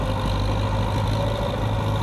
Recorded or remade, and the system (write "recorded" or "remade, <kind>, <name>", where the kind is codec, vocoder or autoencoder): recorded